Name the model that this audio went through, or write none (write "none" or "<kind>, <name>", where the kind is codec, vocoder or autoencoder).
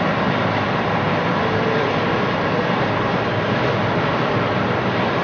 vocoder, BigVGAN v2